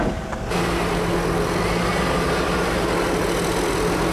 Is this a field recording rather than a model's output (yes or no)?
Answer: yes